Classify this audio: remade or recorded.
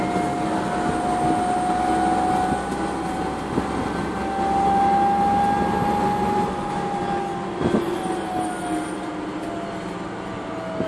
recorded